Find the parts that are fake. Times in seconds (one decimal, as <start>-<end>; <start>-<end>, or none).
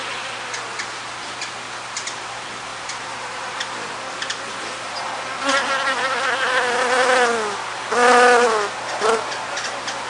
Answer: none